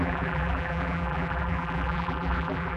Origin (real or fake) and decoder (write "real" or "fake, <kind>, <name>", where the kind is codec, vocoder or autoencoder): fake, vocoder, BigVGAN v2